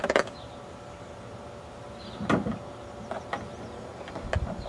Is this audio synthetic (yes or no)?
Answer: no